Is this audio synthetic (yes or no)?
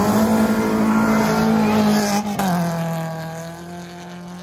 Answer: no